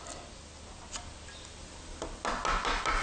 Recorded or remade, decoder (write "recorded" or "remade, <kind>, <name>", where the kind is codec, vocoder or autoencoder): recorded